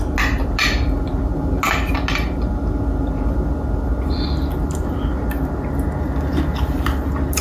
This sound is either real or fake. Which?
real